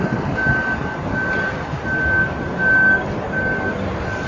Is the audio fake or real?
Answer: real